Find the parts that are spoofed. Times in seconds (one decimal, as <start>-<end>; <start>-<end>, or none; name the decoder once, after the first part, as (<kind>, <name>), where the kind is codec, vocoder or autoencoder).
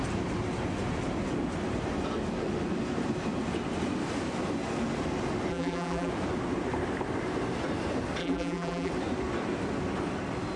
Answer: 5.5-6.1 (vocoder, BigVGAN v2); 8.2-8.9